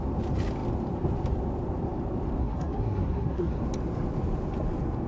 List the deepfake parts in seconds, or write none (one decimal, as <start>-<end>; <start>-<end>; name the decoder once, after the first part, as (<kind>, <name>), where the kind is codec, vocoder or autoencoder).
2.4-3.6 (codec, SNAC)